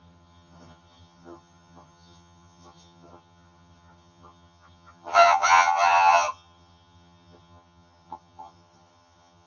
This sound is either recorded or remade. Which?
remade